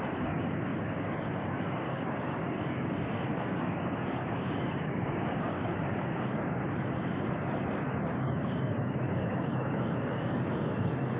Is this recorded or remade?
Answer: remade